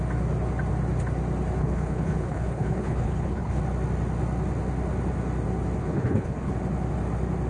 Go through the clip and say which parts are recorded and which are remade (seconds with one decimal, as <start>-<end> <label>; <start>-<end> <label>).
0.0-1.6 recorded; 1.6-3.6 remade; 3.6-5.8 recorded; 5.8-6.5 remade; 6.5-7.5 recorded